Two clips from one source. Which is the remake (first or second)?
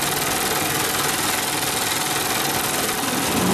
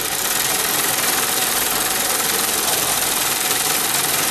second